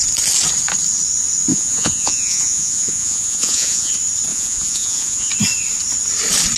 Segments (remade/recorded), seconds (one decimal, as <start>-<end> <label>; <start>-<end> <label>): 0.0-1.5 recorded; 1.5-3.9 remade; 3.9-4.3 recorded; 4.3-5.3 remade; 5.3-6.6 recorded